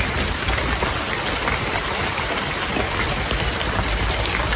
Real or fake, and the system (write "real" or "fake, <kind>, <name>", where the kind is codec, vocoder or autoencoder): fake, vocoder, BigVGAN v2